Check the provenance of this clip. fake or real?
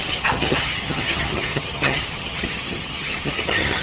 fake